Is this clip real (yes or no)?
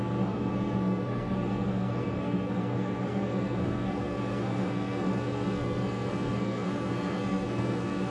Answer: no